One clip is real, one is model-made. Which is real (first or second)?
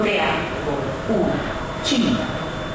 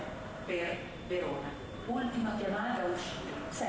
first